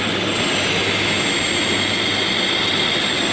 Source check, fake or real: real